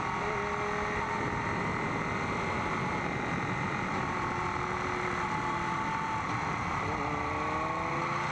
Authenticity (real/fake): real